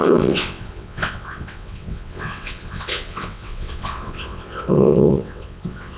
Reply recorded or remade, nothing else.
remade